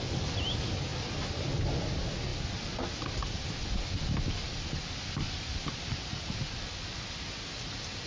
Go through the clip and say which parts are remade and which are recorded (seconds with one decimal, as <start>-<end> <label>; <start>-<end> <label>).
0.0-8.1 recorded